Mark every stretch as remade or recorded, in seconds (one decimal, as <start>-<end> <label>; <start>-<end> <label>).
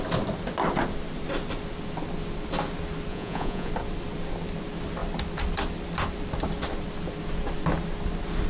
0.0-3.1 recorded; 3.1-3.7 remade; 3.7-8.5 recorded